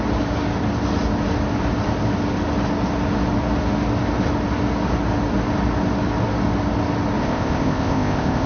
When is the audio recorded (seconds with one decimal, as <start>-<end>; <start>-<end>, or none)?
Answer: 0.0-7.2